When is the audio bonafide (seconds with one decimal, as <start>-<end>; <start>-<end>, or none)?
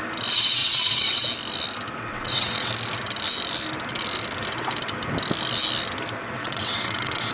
0.0-0.6; 1.2-2.1; 2.7-6.4